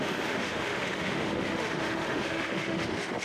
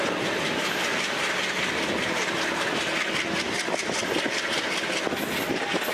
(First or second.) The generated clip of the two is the first